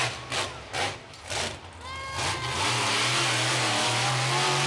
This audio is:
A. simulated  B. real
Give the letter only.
B